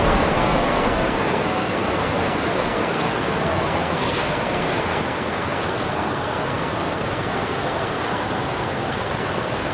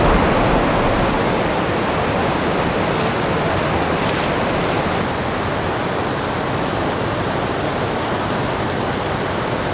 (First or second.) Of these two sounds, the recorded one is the second